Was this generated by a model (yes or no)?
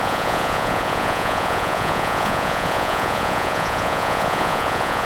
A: yes